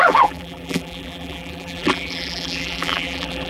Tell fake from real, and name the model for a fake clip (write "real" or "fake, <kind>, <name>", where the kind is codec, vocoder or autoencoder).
fake, vocoder, BigVGAN v2